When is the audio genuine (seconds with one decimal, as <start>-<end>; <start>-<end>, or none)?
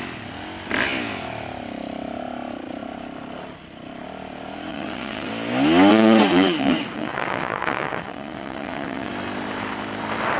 0.0-4.7; 5.3-5.9; 9.1-10.4